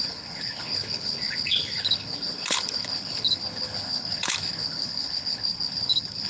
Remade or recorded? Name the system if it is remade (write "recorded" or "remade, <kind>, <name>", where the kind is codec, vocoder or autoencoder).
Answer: remade, codec, HILCodec